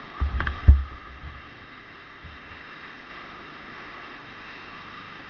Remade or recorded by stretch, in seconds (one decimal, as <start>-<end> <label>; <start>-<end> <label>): 0.0-5.3 remade